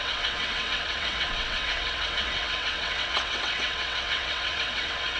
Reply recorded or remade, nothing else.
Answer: remade